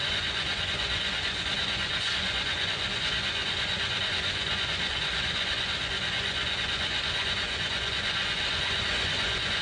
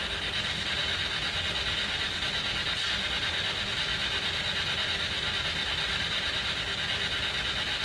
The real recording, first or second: second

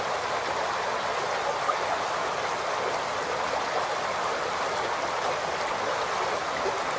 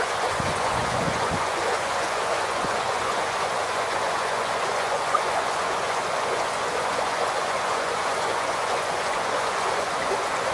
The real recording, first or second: first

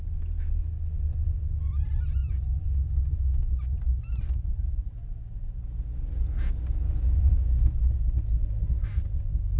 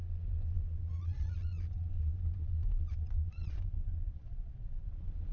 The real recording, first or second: first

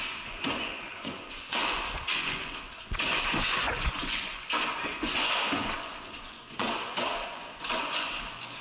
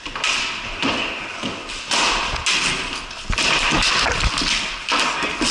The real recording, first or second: second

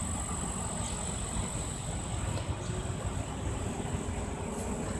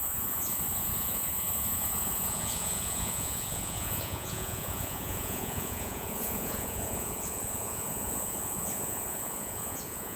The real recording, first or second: first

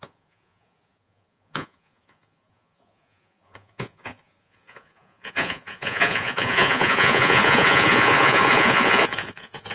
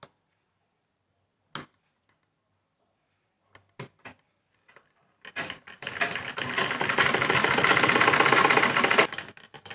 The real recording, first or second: second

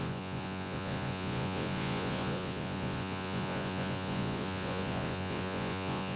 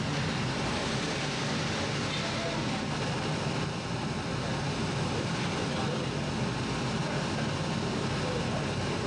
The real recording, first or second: second